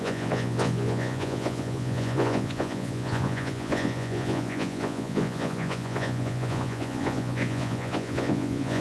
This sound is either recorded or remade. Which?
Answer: remade